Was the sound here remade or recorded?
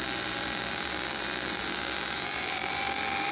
remade